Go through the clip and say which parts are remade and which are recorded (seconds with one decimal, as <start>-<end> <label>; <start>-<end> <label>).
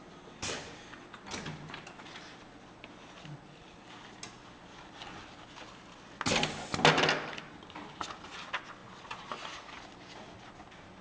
0.0-8.8 recorded; 8.8-9.3 remade; 9.3-11.0 recorded